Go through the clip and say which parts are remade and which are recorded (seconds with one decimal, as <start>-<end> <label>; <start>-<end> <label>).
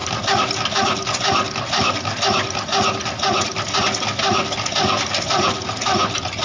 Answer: 0.0-6.4 recorded